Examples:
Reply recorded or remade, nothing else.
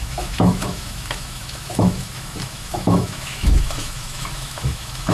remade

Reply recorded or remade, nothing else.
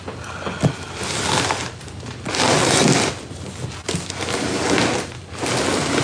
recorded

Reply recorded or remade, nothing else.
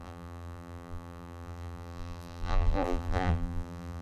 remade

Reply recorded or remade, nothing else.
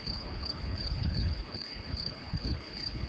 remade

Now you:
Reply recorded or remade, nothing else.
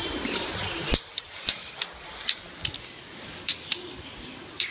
remade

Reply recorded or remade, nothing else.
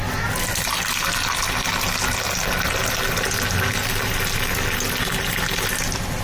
recorded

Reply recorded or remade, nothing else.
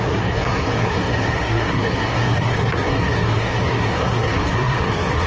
remade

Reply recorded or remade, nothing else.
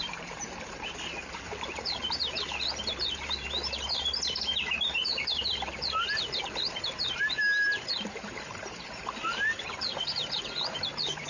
remade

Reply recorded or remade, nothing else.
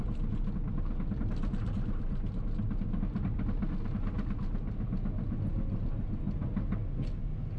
recorded